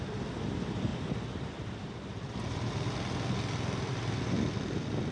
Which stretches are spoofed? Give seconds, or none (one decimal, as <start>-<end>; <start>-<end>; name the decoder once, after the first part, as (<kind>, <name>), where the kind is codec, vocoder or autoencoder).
none